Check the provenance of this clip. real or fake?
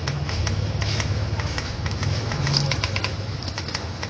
fake